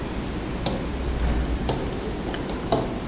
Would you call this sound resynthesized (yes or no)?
no